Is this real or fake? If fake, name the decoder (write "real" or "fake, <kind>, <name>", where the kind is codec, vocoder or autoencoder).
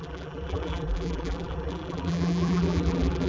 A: fake, vocoder, BigVGAN v2